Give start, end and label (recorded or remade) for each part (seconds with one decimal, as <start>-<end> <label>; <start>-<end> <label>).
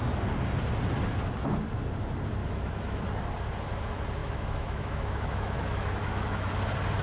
0.0-2.4 recorded; 2.4-3.0 remade; 3.0-4.2 recorded; 4.2-6.5 remade; 6.5-7.0 recorded